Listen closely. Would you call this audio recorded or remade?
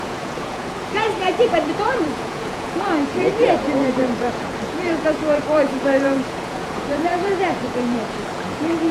remade